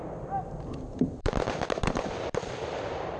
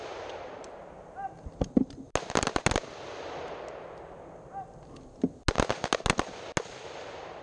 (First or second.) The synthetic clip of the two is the first